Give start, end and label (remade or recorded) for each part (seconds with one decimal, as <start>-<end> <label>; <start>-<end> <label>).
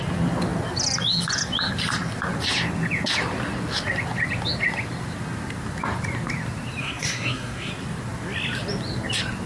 0.0-6.8 recorded; 6.8-7.7 remade; 7.7-9.5 recorded